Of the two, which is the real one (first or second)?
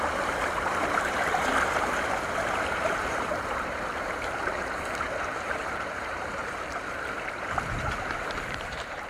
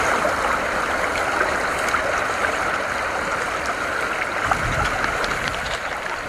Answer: second